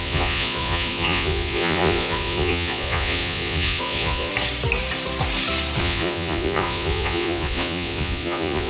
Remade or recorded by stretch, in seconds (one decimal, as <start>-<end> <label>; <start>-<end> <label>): 0.0-4.3 remade; 4.3-5.8 recorded; 5.8-8.7 remade